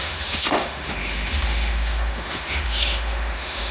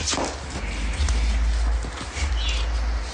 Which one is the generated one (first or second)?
first